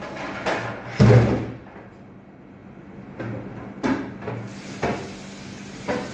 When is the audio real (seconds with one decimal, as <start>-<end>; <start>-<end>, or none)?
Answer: 0.0-6.1